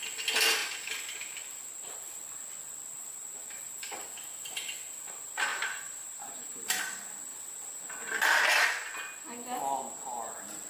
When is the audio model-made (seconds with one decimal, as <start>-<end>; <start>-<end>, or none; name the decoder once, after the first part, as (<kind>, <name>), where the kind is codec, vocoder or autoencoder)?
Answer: 5.5-6.6 (vocoder, BigVGAN v2); 7.3-8.1